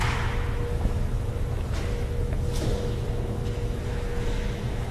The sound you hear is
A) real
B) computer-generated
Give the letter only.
B